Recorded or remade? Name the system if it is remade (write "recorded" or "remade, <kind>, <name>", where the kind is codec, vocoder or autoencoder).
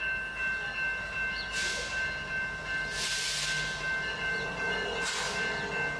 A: recorded